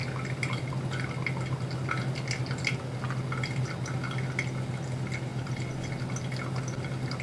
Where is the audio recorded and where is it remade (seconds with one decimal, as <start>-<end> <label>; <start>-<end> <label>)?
0.0-5.3 recorded; 5.3-5.9 remade; 5.9-7.2 recorded

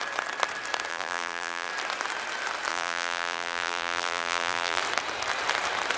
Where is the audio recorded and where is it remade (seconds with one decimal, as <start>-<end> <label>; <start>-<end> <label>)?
0.0-0.9 recorded; 0.9-1.7 remade; 1.7-2.7 recorded; 2.7-4.8 remade; 4.8-6.0 recorded

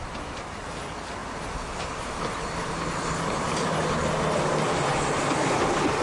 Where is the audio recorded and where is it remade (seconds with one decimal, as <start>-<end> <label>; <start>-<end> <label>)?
0.0-6.0 recorded

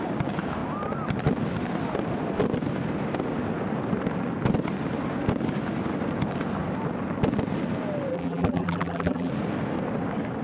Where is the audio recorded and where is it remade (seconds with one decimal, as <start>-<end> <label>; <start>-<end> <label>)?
0.0-8.1 recorded; 8.1-9.3 remade; 9.3-10.4 recorded

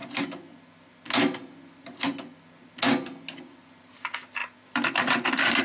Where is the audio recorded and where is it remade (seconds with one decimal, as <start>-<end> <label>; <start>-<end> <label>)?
0.0-3.4 recorded; 3.4-5.6 remade

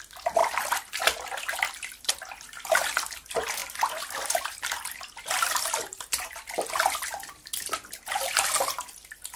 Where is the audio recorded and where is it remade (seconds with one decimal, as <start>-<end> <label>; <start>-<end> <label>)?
0.0-9.4 recorded

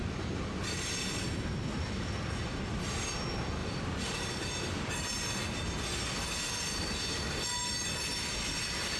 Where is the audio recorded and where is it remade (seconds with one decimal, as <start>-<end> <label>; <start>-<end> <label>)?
0.0-3.6 recorded; 3.6-5.4 remade; 5.4-9.0 recorded

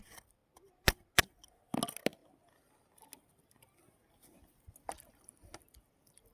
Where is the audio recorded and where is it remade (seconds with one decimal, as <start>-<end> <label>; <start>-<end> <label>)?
0.0-6.3 recorded